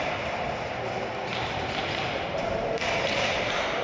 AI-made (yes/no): no